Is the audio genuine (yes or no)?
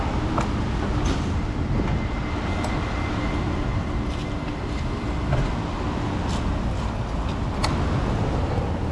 yes